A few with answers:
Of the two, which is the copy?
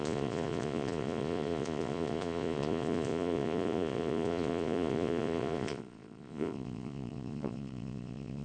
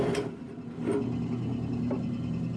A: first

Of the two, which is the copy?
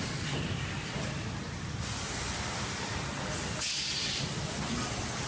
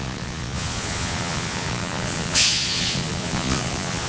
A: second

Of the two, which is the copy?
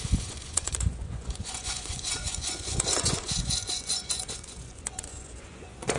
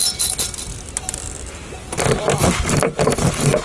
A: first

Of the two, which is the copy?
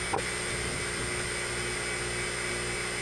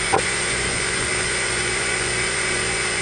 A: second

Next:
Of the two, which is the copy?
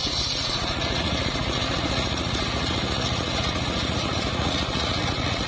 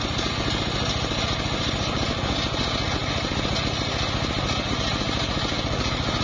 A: first